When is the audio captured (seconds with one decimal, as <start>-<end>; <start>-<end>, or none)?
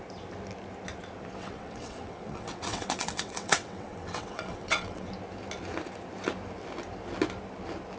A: 0.0-1.4; 5.1-8.0